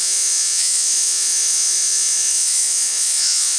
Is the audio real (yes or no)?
no